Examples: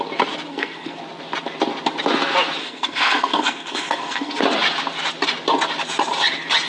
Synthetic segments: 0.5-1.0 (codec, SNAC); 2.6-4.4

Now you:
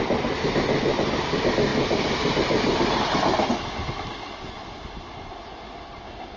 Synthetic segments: none